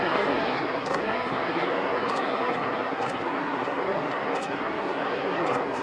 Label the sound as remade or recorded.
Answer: remade